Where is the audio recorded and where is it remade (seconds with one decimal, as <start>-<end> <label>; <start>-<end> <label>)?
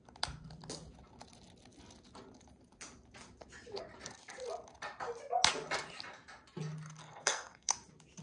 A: 0.0-7.0 recorded; 7.0-7.7 remade; 7.7-8.2 recorded